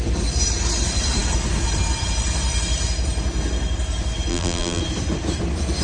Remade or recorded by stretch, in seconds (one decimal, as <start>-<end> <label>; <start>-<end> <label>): 0.0-4.3 recorded; 4.3-4.8 remade; 4.8-5.8 recorded